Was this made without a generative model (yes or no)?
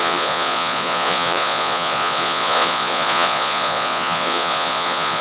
no